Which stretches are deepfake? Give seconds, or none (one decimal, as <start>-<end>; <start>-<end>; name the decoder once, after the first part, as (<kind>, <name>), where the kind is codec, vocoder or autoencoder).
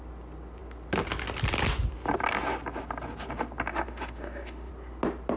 3.7-4.7 (autoencoder, DAC-VAE)